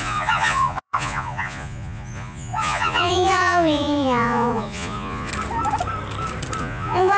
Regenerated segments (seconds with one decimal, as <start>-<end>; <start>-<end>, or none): 0.0-5.3; 6.6-7.2